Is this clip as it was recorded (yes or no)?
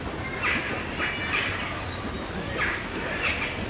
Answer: yes